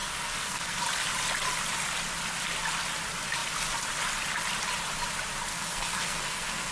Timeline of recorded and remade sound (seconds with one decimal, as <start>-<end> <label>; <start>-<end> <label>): 0.0-0.8 remade; 0.8-5.5 recorded; 5.5-6.7 remade